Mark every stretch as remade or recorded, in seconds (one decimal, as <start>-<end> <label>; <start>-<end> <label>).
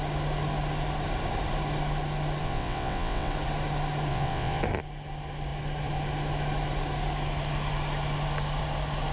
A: 0.0-2.4 recorded; 2.4-3.3 remade; 3.3-4.1 recorded; 4.1-4.6 remade; 4.6-9.1 recorded